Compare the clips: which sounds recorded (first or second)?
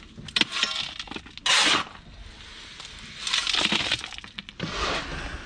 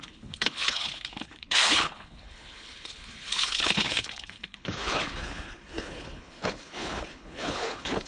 first